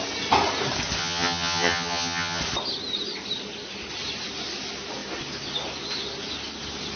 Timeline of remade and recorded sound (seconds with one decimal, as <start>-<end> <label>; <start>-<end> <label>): 0.0-1.0 recorded; 1.0-2.4 remade; 2.4-7.0 recorded